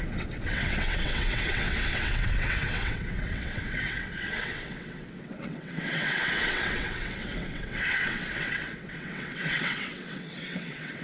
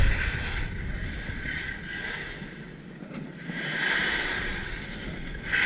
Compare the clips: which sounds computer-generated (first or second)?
first